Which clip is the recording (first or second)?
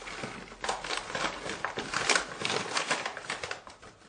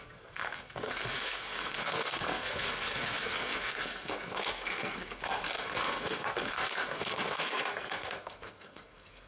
first